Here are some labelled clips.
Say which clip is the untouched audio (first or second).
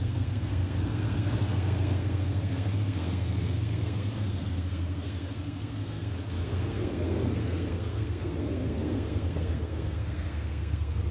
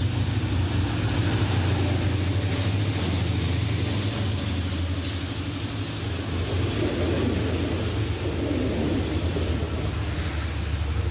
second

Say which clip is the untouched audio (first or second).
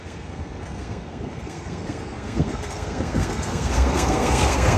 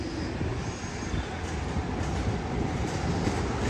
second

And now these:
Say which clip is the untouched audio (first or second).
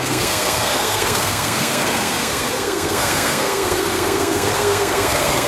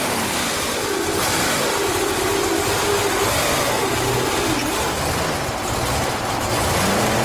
second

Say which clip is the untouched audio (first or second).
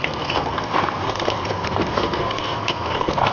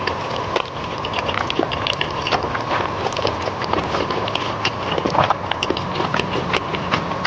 second